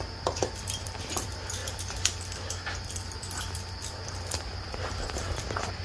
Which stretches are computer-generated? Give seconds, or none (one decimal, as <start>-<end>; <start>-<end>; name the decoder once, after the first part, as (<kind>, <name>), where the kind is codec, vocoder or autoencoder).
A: 0.0-5.8 (vocoder, BigVGAN v2)